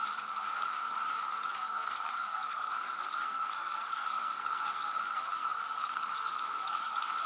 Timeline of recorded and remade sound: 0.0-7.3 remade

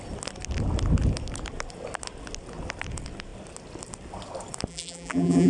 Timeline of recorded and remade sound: 0.0-4.7 recorded; 4.7-5.5 remade

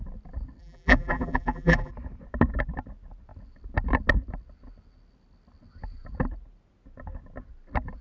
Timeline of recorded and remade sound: 0.0-0.6 recorded; 0.6-1.9 remade; 1.9-8.0 recorded

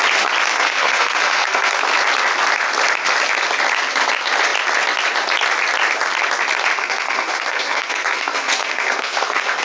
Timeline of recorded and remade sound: 0.0-0.5 recorded; 0.5-1.8 remade; 1.8-6.8 recorded; 6.8-9.6 remade

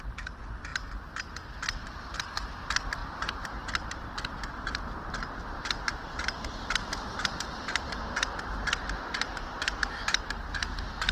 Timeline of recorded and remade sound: 0.0-0.7 remade; 0.7-1.2 recorded; 1.2-11.1 remade

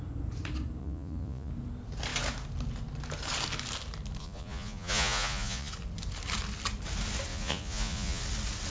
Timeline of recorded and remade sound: 0.0-0.8 recorded; 0.8-1.5 remade; 1.5-4.2 recorded; 4.2-5.7 remade; 5.7-7.3 recorded; 7.3-8.2 remade; 8.2-8.7 recorded